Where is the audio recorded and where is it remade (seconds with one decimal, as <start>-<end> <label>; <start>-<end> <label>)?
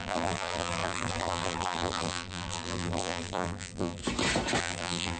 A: 0.0-4.0 remade; 4.0-4.6 recorded; 4.6-5.2 remade